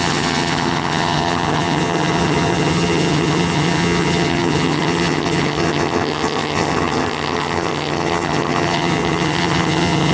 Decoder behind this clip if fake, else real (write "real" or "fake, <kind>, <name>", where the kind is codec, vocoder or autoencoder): fake, vocoder, HiFi-GAN